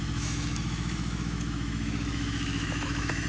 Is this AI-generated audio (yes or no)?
yes